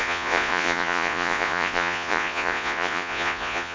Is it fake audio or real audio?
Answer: fake